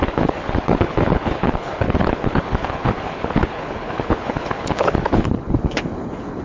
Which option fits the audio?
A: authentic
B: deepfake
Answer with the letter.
B